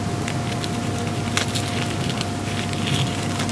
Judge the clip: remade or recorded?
recorded